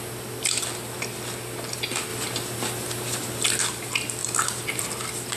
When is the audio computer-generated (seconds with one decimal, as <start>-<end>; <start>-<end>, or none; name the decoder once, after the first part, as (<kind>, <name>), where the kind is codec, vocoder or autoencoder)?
4.2-5.0 (vocoder, BigVGAN v2)